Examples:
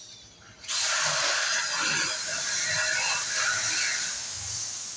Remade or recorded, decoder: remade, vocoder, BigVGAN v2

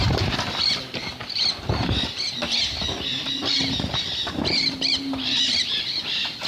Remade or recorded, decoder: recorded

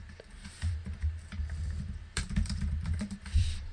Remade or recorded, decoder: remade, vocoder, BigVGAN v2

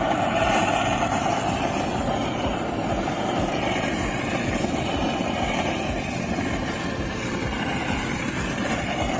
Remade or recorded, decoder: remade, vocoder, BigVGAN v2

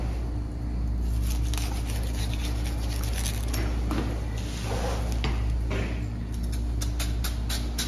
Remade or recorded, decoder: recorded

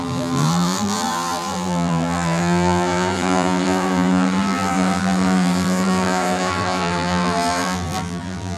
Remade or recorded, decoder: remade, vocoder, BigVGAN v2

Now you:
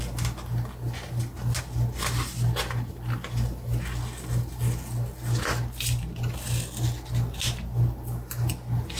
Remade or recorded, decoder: recorded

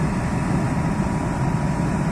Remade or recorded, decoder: remade, vocoder, BigVGAN v2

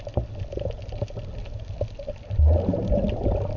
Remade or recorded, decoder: recorded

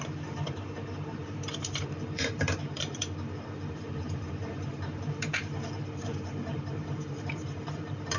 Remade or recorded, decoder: remade, vocoder, BigVGAN v2